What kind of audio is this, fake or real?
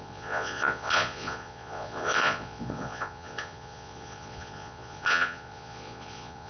fake